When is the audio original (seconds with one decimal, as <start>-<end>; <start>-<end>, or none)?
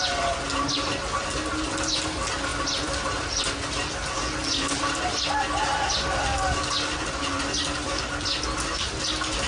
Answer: 0.0-2.5; 3.4-9.5